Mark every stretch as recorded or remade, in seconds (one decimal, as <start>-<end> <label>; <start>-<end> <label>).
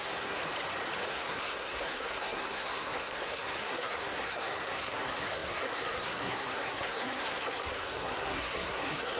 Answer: 0.0-0.4 remade; 0.4-1.1 recorded; 1.1-9.2 remade